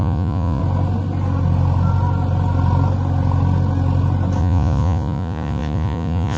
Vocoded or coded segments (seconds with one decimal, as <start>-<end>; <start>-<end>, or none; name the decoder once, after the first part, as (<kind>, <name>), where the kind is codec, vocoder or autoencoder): 0.0-0.6 (vocoder, Vocos); 4.4-6.4